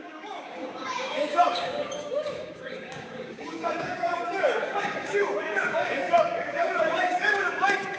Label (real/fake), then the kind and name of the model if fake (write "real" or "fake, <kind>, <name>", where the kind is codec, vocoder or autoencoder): fake, codec, DAC